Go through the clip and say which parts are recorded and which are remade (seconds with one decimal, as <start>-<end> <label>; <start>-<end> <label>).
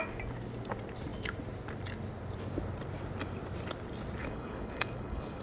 0.0-4.2 recorded; 4.2-5.4 remade